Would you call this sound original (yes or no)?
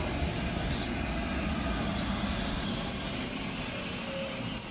yes